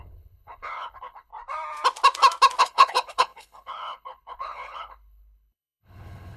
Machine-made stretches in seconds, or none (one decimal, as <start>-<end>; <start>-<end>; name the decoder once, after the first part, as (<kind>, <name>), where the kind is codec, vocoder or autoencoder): 0.0-1.3 (codec, HILCodec); 2.6-6.4